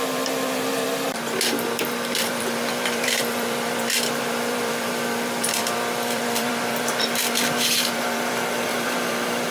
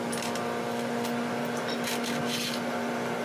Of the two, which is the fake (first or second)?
first